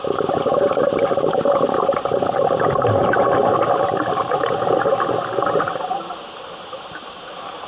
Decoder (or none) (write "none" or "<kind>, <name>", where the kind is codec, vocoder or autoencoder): none